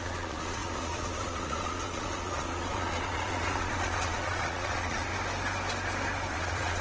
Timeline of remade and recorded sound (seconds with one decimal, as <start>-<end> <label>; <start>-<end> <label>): 0.0-5.1 remade; 5.1-6.3 recorded; 6.3-6.8 remade